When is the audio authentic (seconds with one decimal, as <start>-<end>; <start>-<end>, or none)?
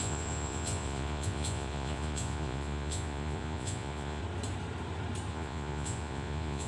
4.2-5.3